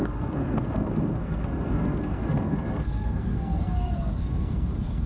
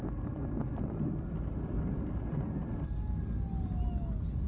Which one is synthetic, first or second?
first